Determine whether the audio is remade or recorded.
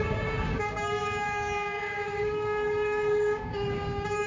remade